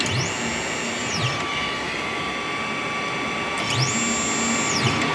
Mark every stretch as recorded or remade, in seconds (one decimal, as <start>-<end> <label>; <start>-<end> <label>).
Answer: 0.0-1.0 recorded; 1.0-1.5 remade; 1.5-5.1 recorded